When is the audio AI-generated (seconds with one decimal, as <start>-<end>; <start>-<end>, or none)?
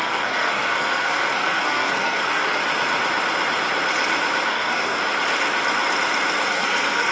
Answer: 0.0-2.6; 4.5-5.0; 6.5-7.1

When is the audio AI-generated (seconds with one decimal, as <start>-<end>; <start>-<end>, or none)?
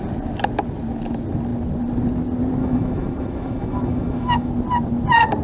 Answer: 2.6-4.5